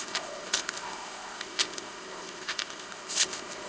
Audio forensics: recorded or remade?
remade